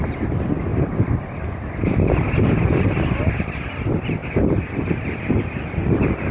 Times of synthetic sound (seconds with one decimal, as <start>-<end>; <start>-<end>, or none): 0.0-0.7; 2.5-6.3